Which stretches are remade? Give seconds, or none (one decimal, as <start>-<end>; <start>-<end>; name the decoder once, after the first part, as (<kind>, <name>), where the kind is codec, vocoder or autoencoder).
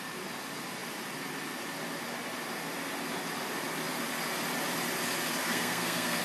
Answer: 5.4-6.2 (codec, SNAC)